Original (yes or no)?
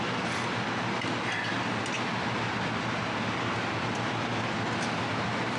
yes